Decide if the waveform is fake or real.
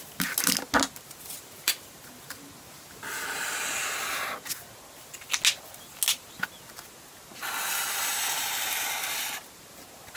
real